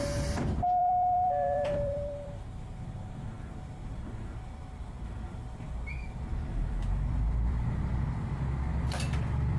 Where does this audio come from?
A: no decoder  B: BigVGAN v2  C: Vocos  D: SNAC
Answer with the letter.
B